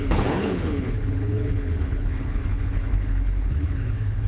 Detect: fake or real fake